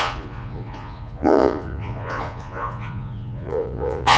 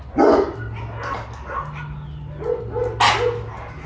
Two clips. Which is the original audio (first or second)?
second